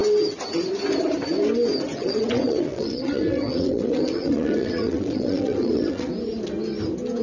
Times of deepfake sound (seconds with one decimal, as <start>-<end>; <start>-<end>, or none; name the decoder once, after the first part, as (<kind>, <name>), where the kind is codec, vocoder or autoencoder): 1.9-6.1 (vocoder, WaveNeXt)

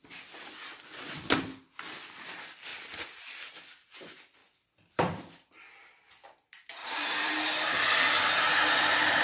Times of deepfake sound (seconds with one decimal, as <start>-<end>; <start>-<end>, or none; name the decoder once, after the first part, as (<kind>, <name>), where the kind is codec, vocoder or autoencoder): 2.7-3.5 (vocoder, BigVGAN v2); 4.4-5.6; 6.8-7.3

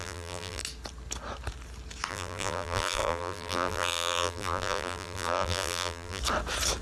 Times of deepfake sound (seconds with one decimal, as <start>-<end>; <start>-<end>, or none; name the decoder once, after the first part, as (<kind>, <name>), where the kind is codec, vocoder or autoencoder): 0.0-0.6 (vocoder, BigVGAN v2); 2.1-6.2

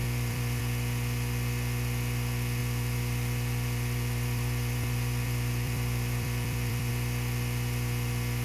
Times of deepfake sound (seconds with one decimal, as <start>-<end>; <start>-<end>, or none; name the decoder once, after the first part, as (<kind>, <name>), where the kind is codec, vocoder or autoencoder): 0.0-0.6 (vocoder, BigVGAN v2); 2.6-6.9